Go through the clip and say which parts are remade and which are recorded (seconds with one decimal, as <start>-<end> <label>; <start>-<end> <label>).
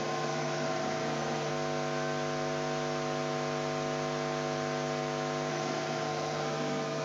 0.0-1.5 remade; 1.5-5.5 recorded; 5.5-7.0 remade